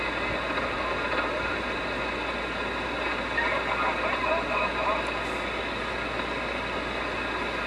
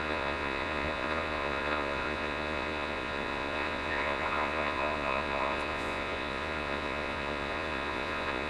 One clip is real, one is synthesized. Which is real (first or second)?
first